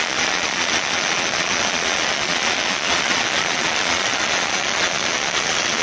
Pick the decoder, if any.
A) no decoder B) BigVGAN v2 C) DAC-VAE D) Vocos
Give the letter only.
D